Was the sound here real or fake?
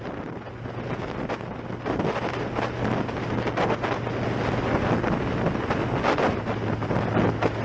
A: real